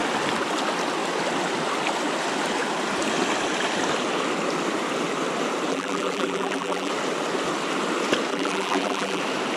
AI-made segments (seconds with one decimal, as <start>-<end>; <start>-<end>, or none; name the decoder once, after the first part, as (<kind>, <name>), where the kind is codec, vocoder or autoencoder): 5.7-6.9 (vocoder, BigVGAN v2); 8.3-9.2